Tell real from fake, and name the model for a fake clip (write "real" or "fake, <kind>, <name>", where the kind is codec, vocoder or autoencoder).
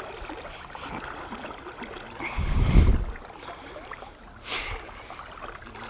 real